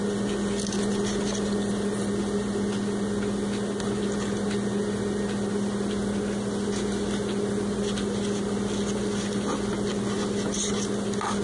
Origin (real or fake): real